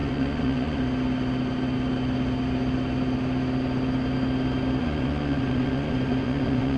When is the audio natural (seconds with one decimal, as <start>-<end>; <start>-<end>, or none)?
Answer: 0.8-4.8